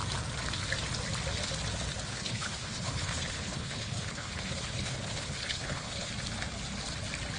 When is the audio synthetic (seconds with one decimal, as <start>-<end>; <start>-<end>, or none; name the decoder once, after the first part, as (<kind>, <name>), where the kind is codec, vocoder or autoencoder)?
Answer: 2.1-6.1 (codec, HILCodec)